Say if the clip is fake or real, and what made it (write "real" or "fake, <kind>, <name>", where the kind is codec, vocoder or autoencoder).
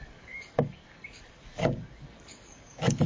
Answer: fake, codec, DAC